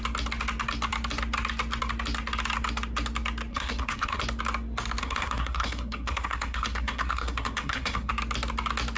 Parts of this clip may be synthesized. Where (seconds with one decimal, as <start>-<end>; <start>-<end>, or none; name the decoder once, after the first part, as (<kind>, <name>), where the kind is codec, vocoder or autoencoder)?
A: 3.5-4.2 (codec, SNAC); 5.0-8.1